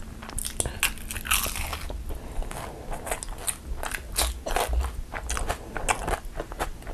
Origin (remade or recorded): recorded